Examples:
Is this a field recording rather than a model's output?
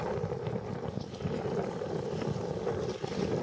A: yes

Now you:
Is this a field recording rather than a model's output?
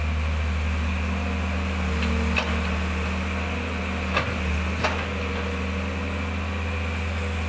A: yes